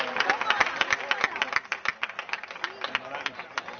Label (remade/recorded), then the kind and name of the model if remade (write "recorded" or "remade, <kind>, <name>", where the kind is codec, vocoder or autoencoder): recorded